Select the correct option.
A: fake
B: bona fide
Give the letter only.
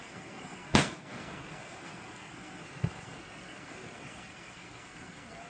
A